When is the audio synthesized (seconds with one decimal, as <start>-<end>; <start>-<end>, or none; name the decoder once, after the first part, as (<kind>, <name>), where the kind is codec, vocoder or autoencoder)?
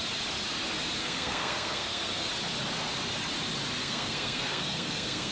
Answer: 1.0-2.3 (codec, SNAC); 3.8-5.3